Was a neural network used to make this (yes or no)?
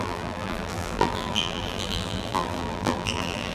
yes